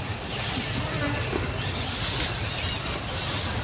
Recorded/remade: recorded